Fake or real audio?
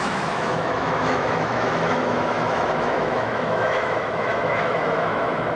fake